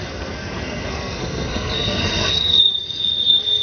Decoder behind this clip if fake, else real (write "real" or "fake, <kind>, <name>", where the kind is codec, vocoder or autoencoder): fake, codec, SNAC